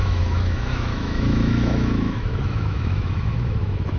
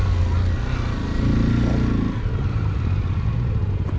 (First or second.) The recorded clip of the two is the second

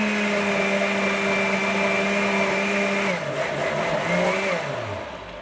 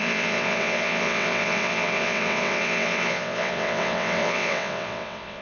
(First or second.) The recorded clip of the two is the first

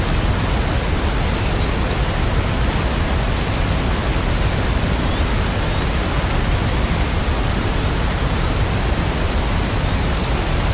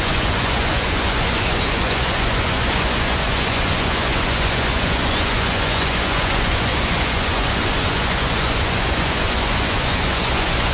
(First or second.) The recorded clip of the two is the first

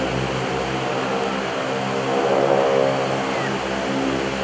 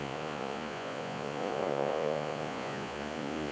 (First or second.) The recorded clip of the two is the first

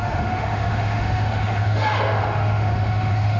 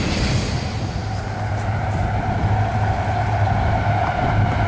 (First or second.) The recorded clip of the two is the second